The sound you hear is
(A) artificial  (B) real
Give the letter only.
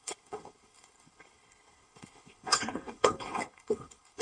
A